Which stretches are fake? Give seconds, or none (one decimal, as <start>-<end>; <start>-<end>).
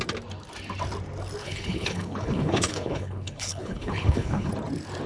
1.4-4.5